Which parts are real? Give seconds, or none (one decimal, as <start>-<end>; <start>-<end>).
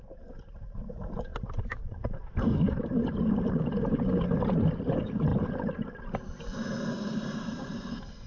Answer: 0.0-1.3; 3.8-8.3